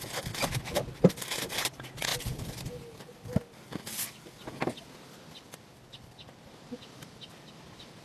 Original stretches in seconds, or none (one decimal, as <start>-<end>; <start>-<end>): 0.0-8.0